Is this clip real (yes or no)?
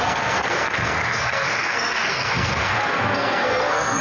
no